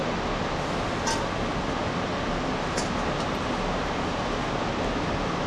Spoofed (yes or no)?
no